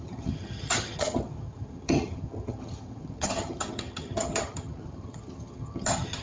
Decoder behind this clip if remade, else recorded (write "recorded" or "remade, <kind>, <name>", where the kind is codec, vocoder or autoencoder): remade, vocoder, HiFi-GAN